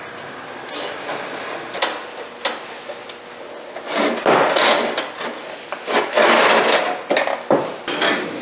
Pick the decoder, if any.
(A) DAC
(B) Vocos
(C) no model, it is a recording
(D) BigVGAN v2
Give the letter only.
C